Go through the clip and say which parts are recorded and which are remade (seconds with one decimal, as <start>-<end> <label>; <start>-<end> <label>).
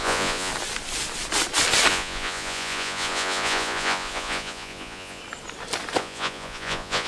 0.0-0.5 remade; 0.5-1.9 recorded; 1.9-5.2 remade; 5.2-6.0 recorded; 6.0-7.1 remade